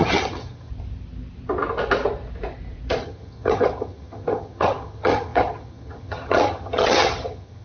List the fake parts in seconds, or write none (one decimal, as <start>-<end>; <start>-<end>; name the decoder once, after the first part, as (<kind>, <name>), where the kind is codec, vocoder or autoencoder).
0.0-0.7 (vocoder, HiFi-GAN); 3.0-7.6